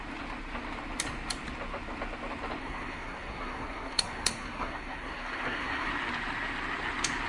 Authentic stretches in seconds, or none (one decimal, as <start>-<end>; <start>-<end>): 0.0-2.6; 5.9-7.3